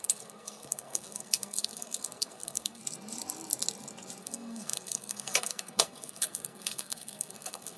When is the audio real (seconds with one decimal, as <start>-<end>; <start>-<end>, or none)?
2.8-4.2